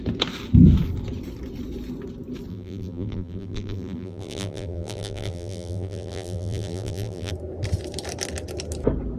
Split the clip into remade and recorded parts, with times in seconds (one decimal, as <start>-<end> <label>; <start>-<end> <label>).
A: 0.0-2.5 recorded; 2.5-7.3 remade; 7.3-9.2 recorded